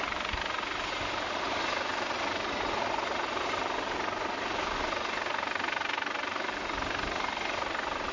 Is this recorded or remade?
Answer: recorded